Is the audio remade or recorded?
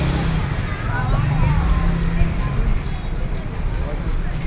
recorded